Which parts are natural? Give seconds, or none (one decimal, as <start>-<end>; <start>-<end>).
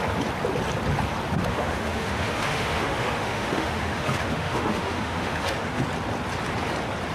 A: 0.0-1.5; 5.8-7.1